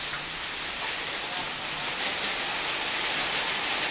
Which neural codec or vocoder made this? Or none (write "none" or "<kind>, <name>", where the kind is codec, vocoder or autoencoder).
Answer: none